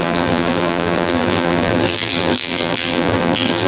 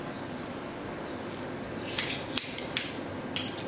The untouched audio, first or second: second